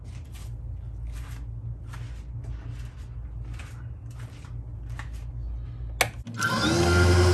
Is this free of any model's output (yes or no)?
yes